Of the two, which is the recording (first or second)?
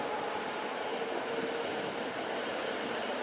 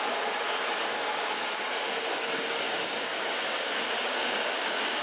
first